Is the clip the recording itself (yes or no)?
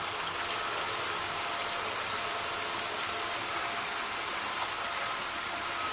yes